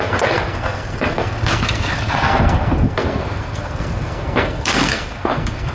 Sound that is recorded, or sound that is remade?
remade